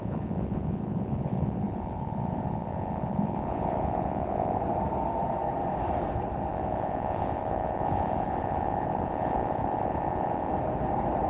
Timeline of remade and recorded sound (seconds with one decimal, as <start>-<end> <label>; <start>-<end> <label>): 0.0-4.6 remade; 4.6-6.5 recorded; 6.5-10.5 remade; 10.5-11.3 recorded